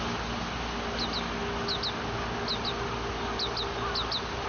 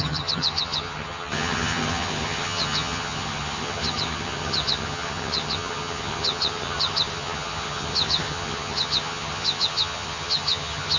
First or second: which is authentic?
first